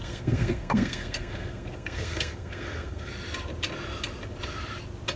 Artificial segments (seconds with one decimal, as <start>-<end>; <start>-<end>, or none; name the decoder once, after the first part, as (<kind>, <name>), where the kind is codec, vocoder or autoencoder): 0.0-3.1 (codec, SNAC)